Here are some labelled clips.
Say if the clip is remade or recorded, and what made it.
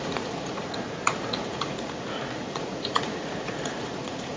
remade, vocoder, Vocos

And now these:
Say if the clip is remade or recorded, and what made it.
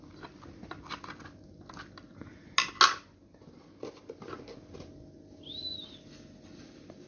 recorded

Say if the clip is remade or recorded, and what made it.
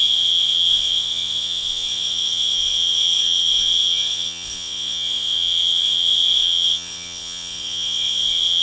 remade, vocoder, WaveNeXt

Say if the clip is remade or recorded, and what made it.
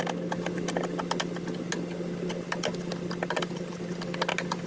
recorded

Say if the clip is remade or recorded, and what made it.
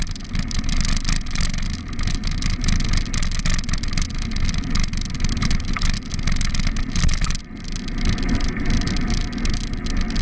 recorded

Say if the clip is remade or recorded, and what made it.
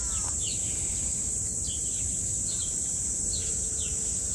remade, vocoder, BigVGAN v2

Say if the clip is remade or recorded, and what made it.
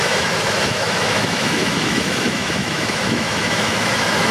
remade, autoencoder, DAC-VAE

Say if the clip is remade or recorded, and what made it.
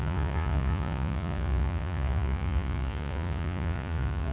remade, vocoder, Vocos